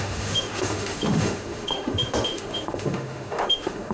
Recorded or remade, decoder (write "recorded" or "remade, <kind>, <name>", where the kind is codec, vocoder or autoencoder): remade, autoencoder, DAC-VAE